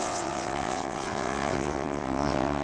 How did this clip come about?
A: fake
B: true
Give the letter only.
A